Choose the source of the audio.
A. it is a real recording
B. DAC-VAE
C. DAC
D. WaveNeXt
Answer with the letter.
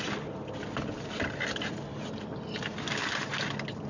A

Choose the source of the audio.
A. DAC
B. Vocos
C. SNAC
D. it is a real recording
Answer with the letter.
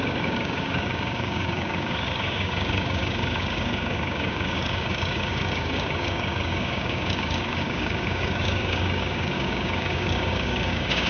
A